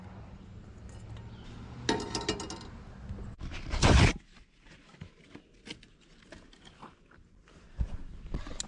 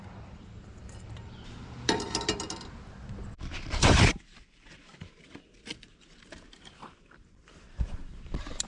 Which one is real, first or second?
first